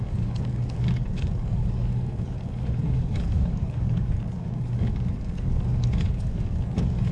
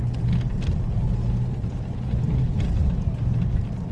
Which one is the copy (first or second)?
first